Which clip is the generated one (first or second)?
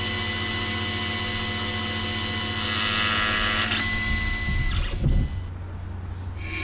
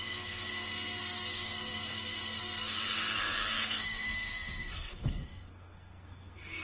second